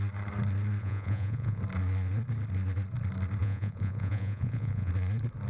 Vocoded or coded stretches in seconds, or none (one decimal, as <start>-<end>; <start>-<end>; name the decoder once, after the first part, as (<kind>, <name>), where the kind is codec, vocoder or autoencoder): 0.8-1.6 (vocoder, Vocos); 3.4-4.9